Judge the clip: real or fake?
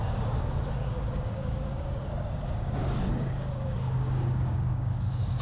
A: fake